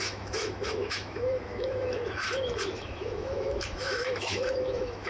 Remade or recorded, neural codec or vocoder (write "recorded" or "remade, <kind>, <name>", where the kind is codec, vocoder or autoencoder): remade, autoencoder, DAC-VAE